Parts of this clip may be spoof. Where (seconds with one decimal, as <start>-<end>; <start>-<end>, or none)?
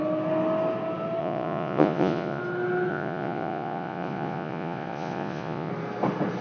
1.2-2.4; 2.9-5.7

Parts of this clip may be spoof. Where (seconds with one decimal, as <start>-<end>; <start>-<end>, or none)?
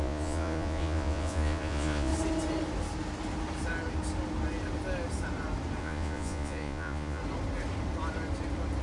0.0-2.1; 5.8-7.2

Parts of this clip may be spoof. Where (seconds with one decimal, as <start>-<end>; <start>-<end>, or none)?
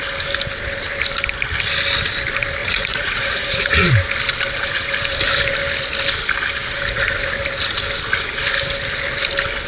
2.6-3.9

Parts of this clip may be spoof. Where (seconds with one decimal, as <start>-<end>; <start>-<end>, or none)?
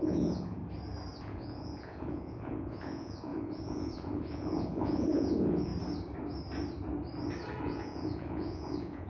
0.0-0.6; 1.2-5.7; 7.6-9.1